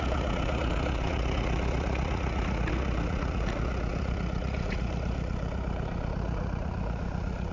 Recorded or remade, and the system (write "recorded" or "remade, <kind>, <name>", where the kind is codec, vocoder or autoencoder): remade, vocoder, Vocos